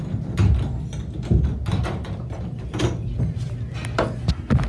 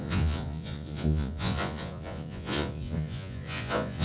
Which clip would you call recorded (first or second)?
first